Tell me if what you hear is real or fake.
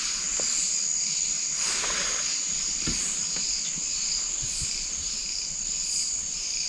real